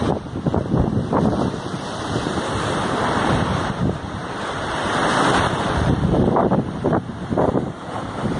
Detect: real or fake fake